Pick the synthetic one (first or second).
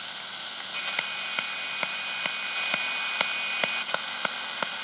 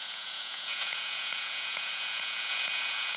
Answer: second